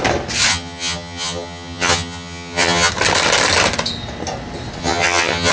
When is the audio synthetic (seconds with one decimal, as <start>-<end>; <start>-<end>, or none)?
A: 0.5-2.9; 4.8-5.5